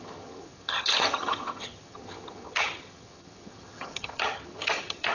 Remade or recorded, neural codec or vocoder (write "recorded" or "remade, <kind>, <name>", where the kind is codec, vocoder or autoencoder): remade, vocoder, HiFi-GAN